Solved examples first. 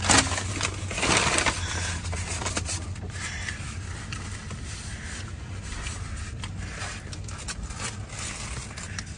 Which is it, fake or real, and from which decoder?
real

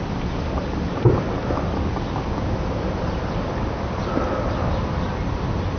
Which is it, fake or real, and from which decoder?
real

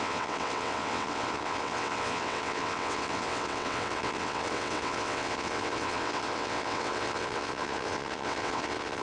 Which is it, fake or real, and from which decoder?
fake, vocoder, WaveNeXt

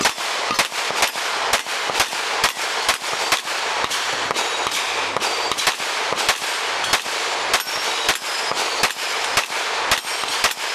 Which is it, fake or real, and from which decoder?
real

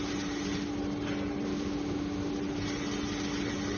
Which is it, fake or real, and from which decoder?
real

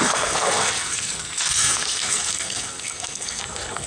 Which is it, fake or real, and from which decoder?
fake, codec, SNAC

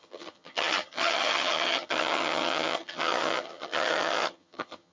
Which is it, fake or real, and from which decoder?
fake, vocoder, HiFi-GAN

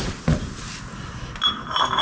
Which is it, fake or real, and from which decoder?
real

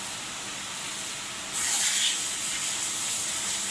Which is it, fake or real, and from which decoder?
real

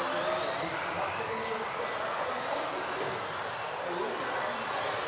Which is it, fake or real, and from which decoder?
real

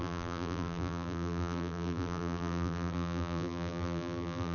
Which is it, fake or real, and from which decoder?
fake, vocoder, BigVGAN v2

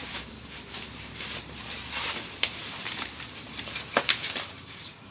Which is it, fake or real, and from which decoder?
fake, vocoder, BigVGAN v2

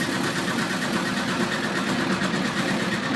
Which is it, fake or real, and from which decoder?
real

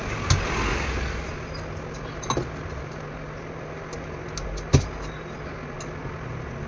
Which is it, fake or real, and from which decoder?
real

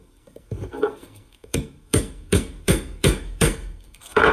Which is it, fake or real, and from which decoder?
fake, codec, SNAC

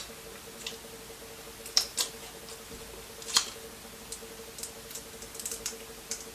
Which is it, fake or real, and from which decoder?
real